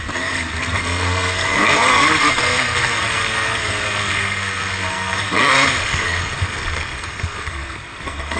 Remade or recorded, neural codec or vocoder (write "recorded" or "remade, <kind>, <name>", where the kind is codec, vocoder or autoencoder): remade, codec, SNAC